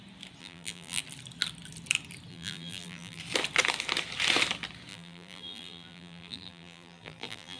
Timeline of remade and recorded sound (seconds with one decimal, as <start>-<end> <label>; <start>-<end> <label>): 0.0-0.4 recorded; 0.4-1.0 remade; 1.0-2.3 recorded; 2.3-3.2 remade; 3.2-4.9 recorded; 4.9-7.6 remade